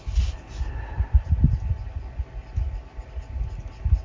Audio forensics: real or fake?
real